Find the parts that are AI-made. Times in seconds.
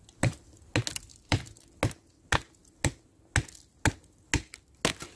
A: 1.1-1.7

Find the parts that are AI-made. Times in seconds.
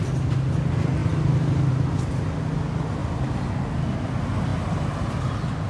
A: 1.0-1.7; 3.0-3.5; 4.5-5.1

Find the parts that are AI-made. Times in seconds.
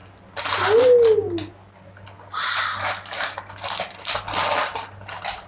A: none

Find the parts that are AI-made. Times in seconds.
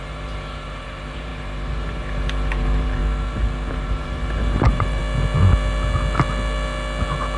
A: 0.0-3.0; 3.7-5.0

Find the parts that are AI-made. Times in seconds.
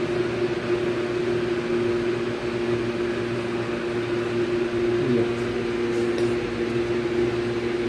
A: none